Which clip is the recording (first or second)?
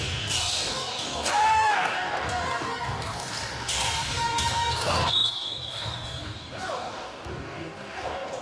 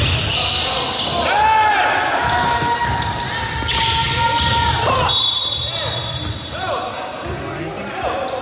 second